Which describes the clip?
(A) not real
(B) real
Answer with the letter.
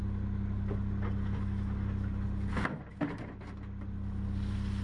B